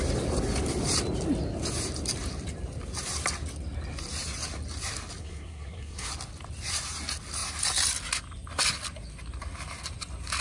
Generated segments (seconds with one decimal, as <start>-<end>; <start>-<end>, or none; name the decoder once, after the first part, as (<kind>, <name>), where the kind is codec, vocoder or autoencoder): 5.2-6.1 (codec, SNAC)